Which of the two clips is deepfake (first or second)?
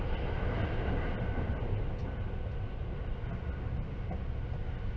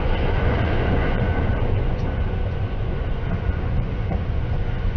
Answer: second